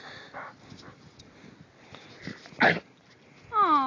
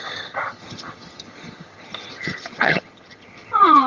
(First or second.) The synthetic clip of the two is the second